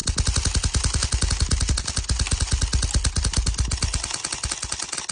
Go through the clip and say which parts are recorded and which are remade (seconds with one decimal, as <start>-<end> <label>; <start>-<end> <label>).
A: 0.0-5.1 recorded